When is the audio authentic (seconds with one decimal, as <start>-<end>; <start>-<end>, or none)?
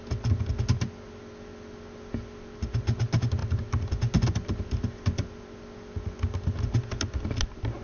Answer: 0.0-7.8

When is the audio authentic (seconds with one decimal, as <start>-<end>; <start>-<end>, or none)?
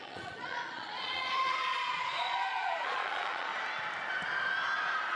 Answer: 3.5-5.1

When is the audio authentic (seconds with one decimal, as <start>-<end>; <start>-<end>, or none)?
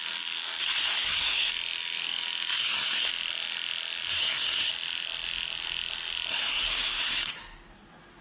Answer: 0.0-0.6; 1.5-2.5; 3.1-4.1; 4.7-6.3; 7.3-8.2